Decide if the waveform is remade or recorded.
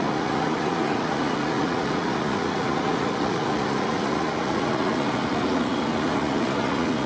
remade